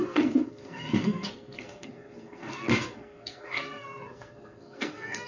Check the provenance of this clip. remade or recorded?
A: remade